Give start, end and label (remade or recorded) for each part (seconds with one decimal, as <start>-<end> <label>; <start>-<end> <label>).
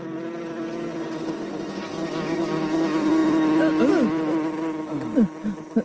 0.0-5.8 recorded